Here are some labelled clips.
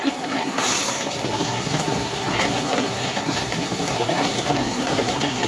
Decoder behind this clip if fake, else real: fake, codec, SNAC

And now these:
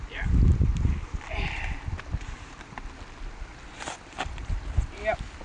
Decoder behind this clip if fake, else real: real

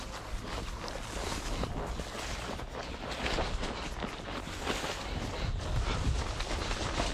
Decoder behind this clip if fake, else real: real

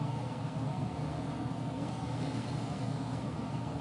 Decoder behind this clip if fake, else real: fake, codec, SNAC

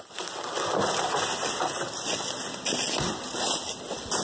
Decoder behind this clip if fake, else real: real